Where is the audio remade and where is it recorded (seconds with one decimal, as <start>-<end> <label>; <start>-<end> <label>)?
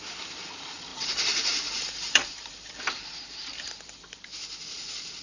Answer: 0.0-0.9 recorded; 0.9-3.7 remade; 3.7-5.2 recorded